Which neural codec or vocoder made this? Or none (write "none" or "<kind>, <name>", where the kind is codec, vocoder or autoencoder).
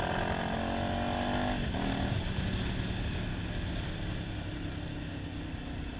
none